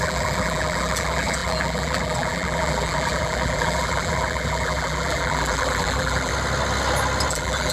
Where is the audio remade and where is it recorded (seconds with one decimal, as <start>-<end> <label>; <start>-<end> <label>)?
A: 0.0-6.3 remade; 6.3-7.3 recorded; 7.3-7.7 remade